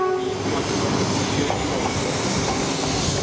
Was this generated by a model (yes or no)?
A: no